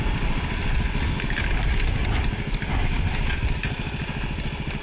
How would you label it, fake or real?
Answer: real